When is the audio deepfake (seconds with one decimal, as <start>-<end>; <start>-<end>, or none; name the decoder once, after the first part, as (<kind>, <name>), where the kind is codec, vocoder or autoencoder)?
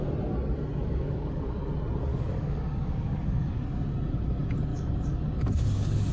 0.8-1.7 (codec, DAC); 2.1-3.6; 4.7-6.1